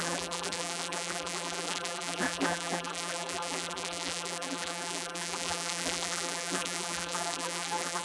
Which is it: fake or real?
fake